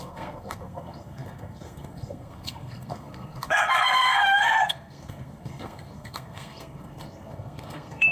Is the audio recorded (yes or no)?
no